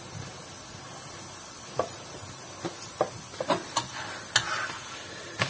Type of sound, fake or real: real